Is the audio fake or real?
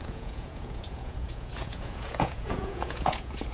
fake